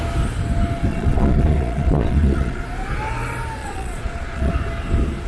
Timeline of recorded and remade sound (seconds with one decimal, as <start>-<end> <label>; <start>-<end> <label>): 0.0-0.9 recorded; 0.9-2.6 remade; 2.6-3.6 recorded; 3.6-4.5 remade; 4.5-5.3 recorded